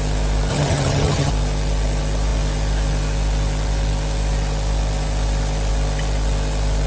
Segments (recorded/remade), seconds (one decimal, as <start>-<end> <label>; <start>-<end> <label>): 0.0-0.5 recorded; 0.5-1.3 remade; 1.3-6.9 recorded